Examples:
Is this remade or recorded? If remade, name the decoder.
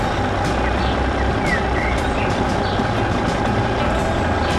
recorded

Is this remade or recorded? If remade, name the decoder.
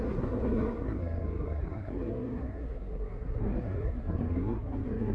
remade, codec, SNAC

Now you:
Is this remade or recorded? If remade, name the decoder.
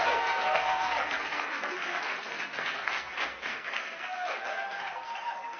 remade, codec, SNAC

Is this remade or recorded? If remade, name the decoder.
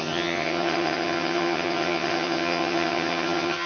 remade, vocoder, HiFi-GAN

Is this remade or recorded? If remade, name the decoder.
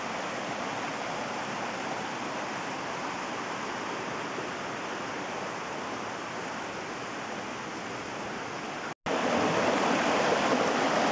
recorded